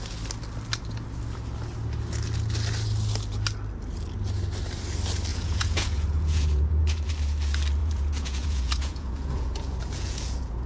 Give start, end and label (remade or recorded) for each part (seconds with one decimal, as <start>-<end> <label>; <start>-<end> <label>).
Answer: 0.0-5.3 recorded; 5.3-7.1 remade; 7.1-7.8 recorded; 7.8-10.7 remade